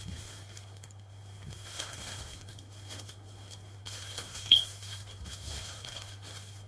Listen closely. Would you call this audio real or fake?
fake